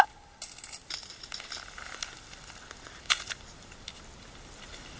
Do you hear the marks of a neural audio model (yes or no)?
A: no